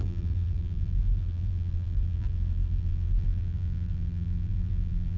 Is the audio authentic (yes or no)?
no